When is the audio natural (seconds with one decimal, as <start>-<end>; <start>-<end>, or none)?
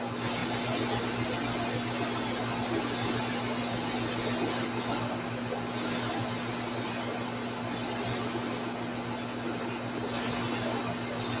0.0-11.4